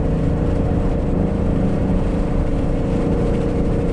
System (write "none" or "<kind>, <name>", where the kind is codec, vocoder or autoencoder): vocoder, BigVGAN v2